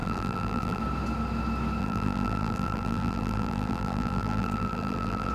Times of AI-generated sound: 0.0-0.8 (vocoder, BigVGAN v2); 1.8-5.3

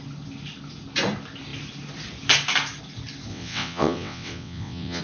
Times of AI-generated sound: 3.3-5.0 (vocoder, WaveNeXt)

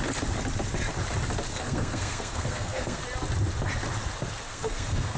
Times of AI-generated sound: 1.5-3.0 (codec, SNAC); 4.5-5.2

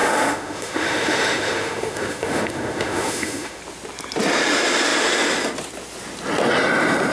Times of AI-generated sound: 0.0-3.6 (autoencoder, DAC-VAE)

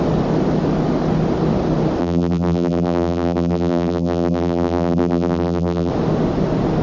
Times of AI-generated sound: 2.0-5.9 (vocoder, BigVGAN v2)

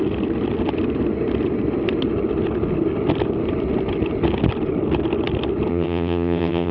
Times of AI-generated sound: 5.7-6.7 (vocoder, HiFi-GAN)